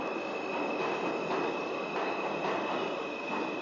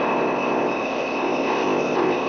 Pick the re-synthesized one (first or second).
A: second